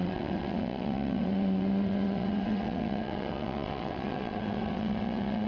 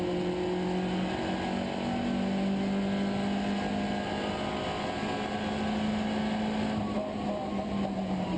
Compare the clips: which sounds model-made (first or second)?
first